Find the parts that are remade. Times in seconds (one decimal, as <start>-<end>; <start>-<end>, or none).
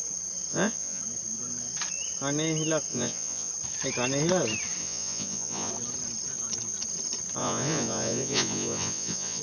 0.5-1.0; 2.9-3.5; 4.8-5.7; 7.4-9.4